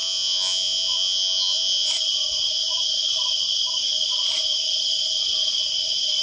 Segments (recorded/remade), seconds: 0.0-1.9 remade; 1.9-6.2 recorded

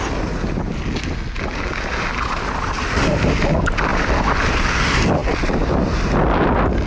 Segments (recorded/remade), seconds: 0.0-6.9 recorded

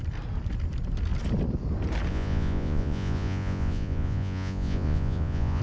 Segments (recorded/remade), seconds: 0.0-2.1 recorded; 2.1-5.6 remade

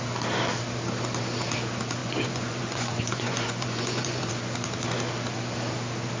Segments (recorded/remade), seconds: 0.0-2.0 recorded; 2.0-4.3 remade; 4.3-6.2 recorded

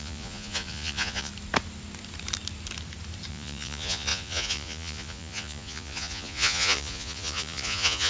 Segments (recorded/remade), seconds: 0.0-1.3 remade; 1.3-3.3 recorded; 3.3-8.1 remade

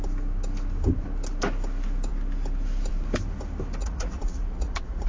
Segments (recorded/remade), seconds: 0.0-3.8 recorded; 3.8-5.1 remade